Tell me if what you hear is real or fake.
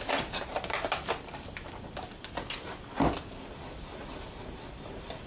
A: real